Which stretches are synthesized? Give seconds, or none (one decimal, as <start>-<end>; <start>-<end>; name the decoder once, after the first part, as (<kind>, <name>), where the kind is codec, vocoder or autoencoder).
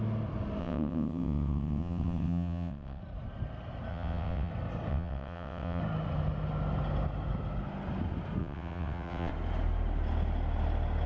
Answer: 0.6-3.0 (vocoder, WaveNeXt); 3.9-4.5; 4.9-5.8; 8.4-9.3